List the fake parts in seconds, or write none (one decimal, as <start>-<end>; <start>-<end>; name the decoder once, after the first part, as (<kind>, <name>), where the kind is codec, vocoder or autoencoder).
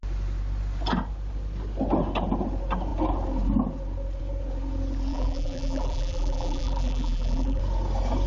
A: 5.1-7.6 (vocoder, BigVGAN v2)